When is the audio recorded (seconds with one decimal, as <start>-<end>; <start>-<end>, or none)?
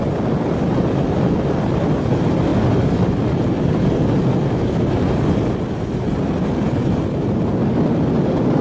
0.0-8.6